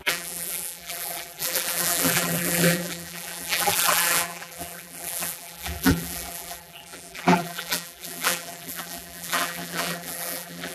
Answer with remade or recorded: remade